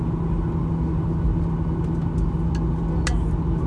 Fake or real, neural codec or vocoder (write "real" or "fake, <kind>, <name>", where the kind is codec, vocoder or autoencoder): real